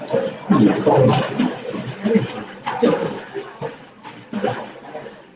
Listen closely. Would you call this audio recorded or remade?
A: recorded